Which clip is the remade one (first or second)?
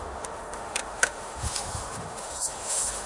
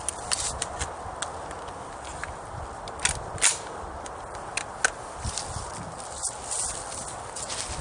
first